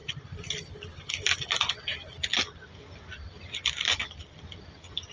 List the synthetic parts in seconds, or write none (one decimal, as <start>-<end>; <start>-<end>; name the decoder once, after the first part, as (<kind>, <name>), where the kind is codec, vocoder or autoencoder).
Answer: none